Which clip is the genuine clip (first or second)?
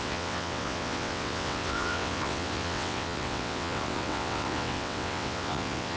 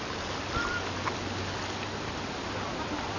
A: second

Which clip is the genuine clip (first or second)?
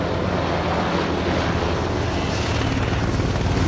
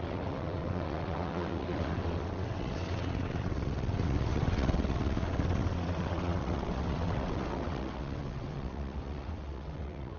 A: first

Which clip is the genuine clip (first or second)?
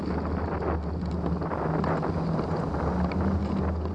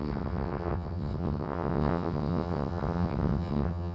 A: first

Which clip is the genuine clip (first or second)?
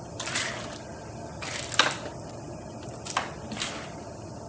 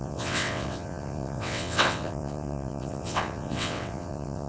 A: first